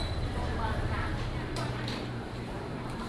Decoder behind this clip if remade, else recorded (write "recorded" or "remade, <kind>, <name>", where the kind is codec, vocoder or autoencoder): remade, vocoder, BigVGAN v2